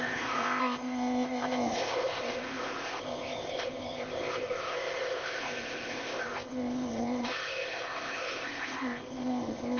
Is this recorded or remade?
remade